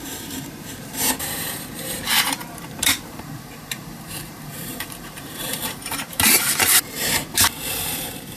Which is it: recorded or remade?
remade